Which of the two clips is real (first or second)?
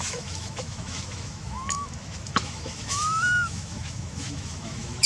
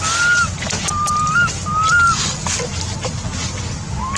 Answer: second